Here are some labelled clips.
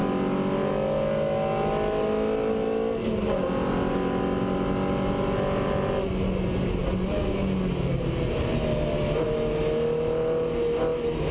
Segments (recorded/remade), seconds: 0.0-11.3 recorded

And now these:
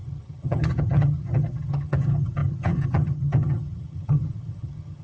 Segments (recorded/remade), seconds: 0.0-5.0 remade

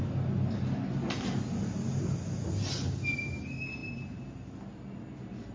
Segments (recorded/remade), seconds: 0.0-5.5 recorded

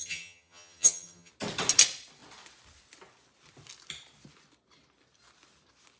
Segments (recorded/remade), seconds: 0.0-1.3 remade; 1.3-6.0 recorded